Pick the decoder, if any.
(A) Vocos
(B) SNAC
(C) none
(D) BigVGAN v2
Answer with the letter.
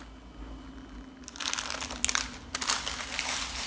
C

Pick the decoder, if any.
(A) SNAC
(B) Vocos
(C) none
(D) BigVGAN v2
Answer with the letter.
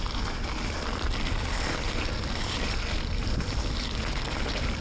D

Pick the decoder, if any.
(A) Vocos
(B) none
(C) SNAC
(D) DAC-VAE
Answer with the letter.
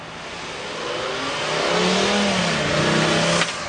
B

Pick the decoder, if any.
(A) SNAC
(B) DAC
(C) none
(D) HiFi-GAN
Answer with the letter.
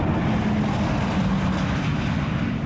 C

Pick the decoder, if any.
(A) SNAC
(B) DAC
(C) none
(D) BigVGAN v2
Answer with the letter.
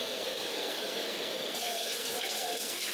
A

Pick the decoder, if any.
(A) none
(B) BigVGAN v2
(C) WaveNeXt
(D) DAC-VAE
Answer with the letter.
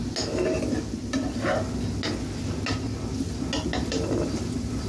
A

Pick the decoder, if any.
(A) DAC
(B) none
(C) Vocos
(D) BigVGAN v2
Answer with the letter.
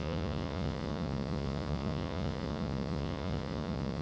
C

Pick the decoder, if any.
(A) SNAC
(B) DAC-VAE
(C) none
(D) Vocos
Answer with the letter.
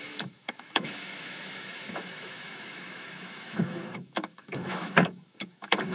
B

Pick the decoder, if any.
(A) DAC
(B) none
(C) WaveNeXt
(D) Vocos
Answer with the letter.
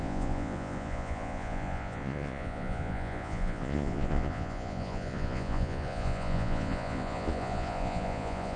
D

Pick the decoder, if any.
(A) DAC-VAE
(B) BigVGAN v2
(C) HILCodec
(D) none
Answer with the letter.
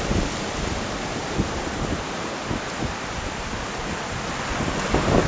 D